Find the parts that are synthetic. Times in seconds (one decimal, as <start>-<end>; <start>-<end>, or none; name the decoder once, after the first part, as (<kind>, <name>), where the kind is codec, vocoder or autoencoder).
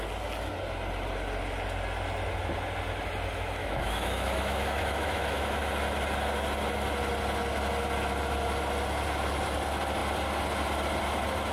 3.6-5.6 (autoencoder, DAC-VAE)